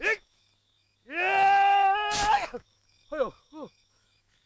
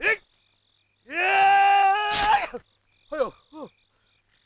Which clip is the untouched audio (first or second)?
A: second